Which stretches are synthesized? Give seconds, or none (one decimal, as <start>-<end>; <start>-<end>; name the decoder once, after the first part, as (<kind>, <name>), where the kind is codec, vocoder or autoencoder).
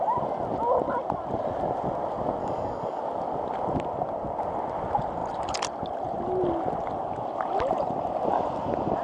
2.4-3.0 (codec, DAC)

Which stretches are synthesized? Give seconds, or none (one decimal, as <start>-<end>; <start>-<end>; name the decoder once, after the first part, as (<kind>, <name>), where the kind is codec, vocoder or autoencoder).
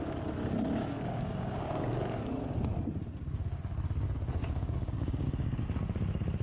0.8-1.9 (codec, DAC); 4.4-5.6